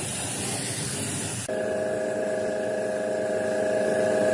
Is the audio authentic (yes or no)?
yes